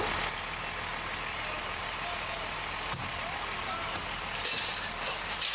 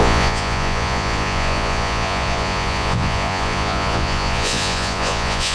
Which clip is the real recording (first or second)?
first